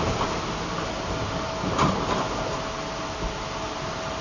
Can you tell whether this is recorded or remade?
recorded